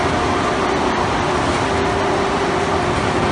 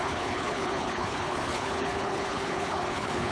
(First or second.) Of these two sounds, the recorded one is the first